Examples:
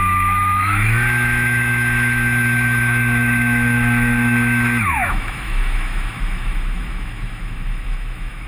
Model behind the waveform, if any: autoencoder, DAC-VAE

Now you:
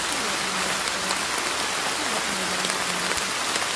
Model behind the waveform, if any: none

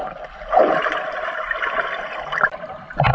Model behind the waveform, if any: vocoder, BigVGAN v2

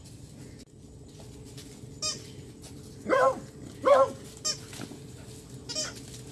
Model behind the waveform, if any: none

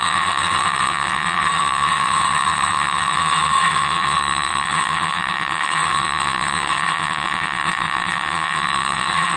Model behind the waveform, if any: vocoder, WaveNeXt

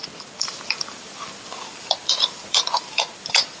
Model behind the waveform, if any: vocoder, BigVGAN v2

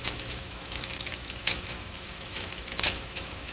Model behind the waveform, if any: autoencoder, DAC-VAE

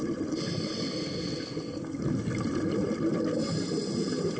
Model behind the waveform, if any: none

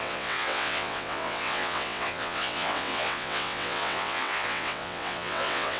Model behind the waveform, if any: vocoder, WaveNeXt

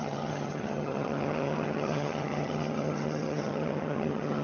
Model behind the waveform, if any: vocoder, HiFi-GAN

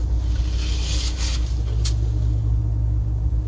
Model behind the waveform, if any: none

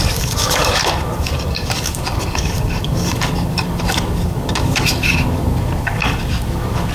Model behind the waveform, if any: codec, DAC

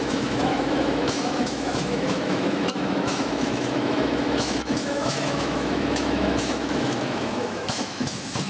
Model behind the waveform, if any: autoencoder, DAC-VAE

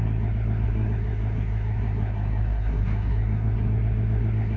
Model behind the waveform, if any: codec, SNAC